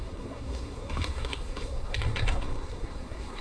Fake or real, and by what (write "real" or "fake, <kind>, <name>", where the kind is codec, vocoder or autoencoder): fake, codec, SNAC